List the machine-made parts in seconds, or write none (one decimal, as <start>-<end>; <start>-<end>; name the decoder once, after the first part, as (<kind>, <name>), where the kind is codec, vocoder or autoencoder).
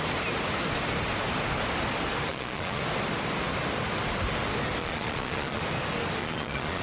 2.3-2.8 (vocoder, Vocos); 4.8-5.6; 6.2-6.8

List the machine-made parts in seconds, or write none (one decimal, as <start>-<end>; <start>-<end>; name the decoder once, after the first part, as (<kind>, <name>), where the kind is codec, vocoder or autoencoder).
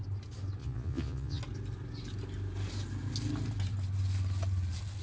0.6-1.4 (vocoder, Vocos)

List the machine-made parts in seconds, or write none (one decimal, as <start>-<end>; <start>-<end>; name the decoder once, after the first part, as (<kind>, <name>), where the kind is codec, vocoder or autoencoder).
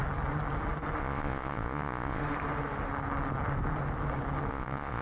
1.0-2.2 (vocoder, Vocos); 4.5-5.0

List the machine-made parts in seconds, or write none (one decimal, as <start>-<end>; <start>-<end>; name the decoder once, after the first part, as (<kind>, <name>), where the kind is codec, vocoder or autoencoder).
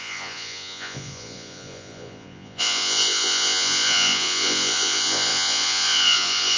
0.0-6.6 (vocoder, Vocos)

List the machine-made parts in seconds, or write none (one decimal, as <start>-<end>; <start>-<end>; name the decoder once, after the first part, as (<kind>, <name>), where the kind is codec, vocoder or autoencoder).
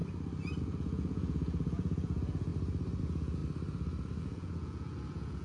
0.6-2.5 (vocoder, Vocos); 3.0-3.4; 4.2-5.4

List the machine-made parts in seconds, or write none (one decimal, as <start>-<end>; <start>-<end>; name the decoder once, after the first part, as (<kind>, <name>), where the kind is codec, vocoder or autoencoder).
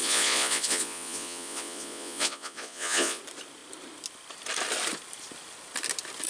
0.0-3.2 (vocoder, Vocos)